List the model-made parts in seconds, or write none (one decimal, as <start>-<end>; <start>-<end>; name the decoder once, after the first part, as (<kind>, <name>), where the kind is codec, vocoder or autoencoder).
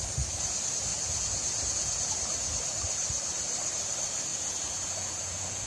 0.9-2.1 (vocoder, Vocos); 4.3-5.7